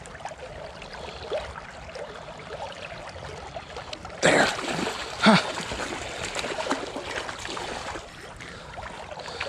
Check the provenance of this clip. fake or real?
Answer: real